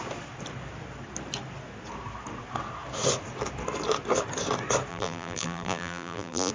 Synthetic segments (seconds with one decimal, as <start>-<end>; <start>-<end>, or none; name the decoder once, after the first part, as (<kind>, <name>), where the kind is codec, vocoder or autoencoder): 4.9-6.5 (vocoder, BigVGAN v2)